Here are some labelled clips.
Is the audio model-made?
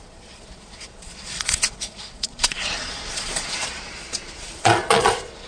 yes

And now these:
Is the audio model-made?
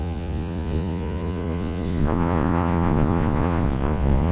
yes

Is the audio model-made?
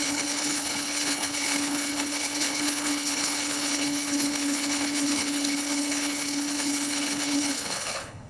yes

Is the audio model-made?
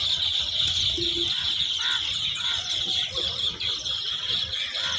no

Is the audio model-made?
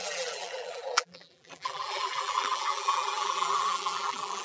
yes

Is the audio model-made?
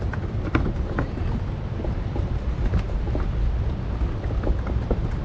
yes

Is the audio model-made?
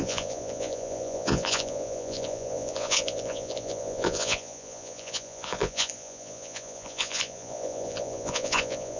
yes